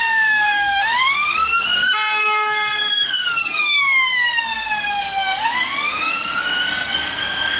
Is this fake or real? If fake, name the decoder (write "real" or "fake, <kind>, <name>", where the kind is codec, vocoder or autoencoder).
fake, codec, SNAC